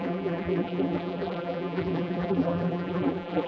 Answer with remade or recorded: remade